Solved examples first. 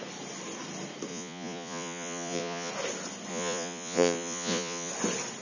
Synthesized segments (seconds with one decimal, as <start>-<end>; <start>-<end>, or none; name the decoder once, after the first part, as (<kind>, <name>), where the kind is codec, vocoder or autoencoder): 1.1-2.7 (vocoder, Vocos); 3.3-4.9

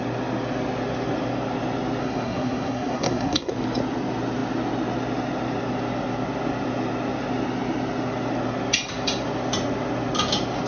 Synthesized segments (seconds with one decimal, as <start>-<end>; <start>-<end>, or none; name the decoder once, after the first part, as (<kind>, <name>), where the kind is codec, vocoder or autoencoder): 2.0-3.5 (codec, SNAC)

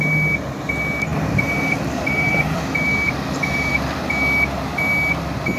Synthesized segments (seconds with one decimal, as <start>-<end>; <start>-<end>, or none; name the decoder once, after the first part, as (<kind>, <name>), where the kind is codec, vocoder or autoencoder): 1.1-3.7 (vocoder, BigVGAN v2)